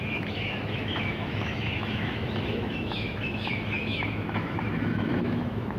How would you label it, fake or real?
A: fake